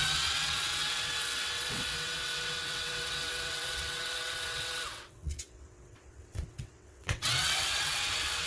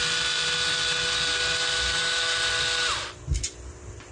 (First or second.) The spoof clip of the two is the first